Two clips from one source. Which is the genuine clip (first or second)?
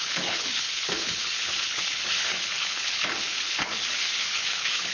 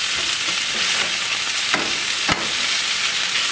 second